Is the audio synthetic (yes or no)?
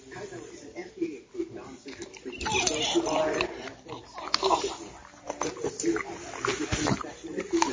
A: yes